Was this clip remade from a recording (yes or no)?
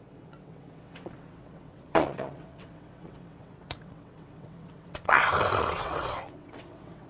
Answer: yes